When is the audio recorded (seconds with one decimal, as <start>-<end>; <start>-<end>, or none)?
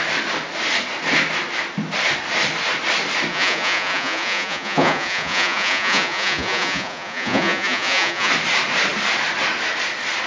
0.0-3.3; 8.3-10.3